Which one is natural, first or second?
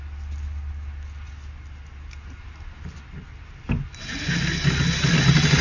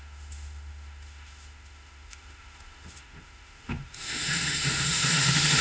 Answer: first